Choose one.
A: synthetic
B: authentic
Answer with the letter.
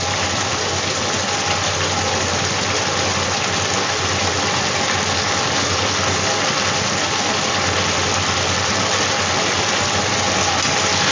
B